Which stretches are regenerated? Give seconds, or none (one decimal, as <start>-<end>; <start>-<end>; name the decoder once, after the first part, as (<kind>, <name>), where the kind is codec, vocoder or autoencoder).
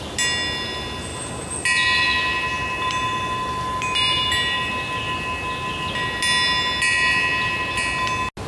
none